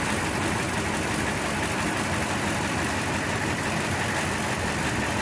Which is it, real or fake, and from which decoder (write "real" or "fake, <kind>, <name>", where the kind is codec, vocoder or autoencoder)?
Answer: real